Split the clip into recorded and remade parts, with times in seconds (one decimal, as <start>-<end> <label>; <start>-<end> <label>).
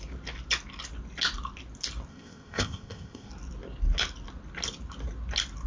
0.0-2.1 recorded; 2.1-3.3 remade; 3.3-5.7 recorded